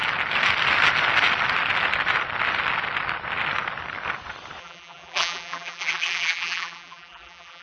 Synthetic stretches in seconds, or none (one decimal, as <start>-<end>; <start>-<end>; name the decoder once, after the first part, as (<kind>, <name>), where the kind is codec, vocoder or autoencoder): 4.6-7.6 (vocoder, BigVGAN v2)